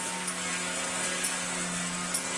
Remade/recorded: recorded